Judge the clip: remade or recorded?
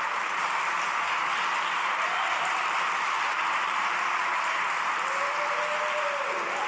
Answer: recorded